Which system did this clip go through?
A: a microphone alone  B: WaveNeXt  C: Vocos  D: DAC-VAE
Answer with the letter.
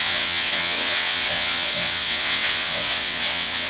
B